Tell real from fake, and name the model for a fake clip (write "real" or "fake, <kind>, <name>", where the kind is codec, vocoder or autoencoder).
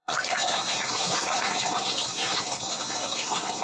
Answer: fake, codec, SNAC